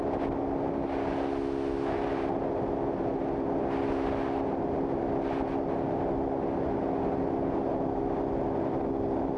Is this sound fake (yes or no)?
no